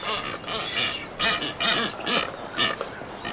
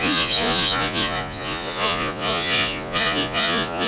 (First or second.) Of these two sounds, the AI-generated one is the second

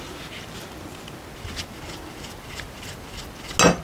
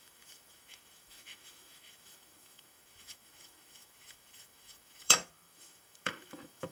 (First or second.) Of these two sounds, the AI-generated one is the second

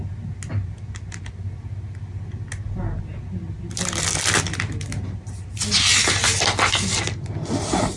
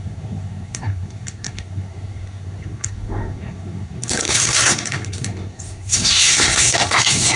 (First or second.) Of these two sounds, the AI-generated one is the second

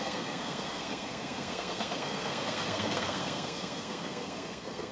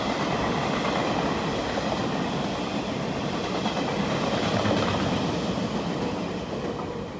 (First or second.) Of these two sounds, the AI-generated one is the first